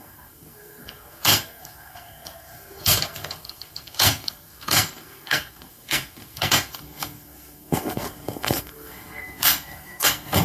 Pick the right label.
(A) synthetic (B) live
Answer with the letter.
A